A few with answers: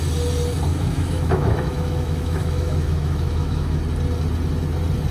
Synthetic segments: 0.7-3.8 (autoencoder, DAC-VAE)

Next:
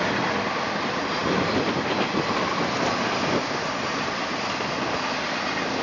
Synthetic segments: none

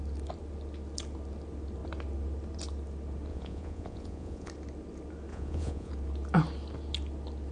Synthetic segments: 3.3-4.5 (vocoder, Vocos); 5.3-5.9

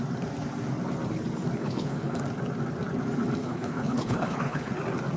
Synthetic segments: 1.6-2.2 (codec, HILCodec); 3.4-4.7

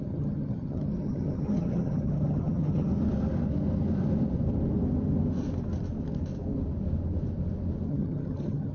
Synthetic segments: 0.0-2.9 (vocoder, HiFi-GAN); 7.9-8.7